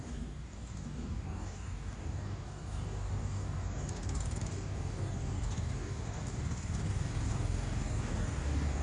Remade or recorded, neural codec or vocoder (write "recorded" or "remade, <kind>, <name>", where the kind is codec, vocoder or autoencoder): remade, codec, DAC